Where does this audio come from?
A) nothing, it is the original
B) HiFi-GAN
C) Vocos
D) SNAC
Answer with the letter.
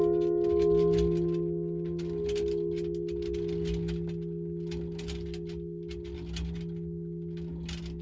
A